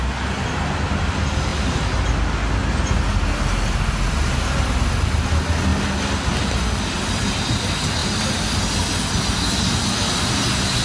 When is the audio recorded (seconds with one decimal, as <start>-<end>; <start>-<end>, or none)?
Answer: 0.0-10.8